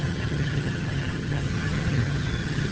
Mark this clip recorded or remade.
remade